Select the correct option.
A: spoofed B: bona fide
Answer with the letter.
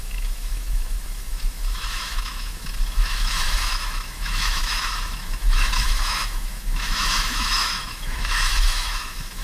A